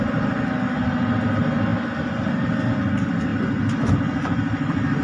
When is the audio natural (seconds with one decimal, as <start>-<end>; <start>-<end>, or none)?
0.0-5.0